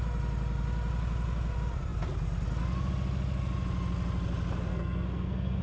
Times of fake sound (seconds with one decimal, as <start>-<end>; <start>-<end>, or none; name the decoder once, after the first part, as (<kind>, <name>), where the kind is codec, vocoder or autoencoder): 4.7-5.6 (codec, SNAC)